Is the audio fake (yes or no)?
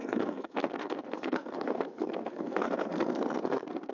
yes